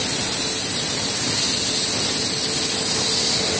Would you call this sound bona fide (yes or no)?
yes